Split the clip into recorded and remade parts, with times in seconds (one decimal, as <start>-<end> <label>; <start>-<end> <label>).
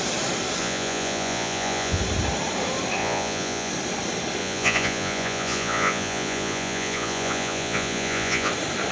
0.0-0.6 recorded; 0.6-2.0 remade; 2.0-3.0 recorded; 3.0-3.7 remade; 3.7-4.4 recorded; 4.4-8.5 remade; 8.5-8.9 recorded